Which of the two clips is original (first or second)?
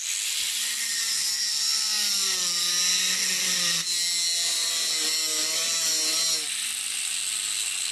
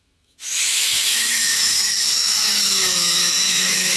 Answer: first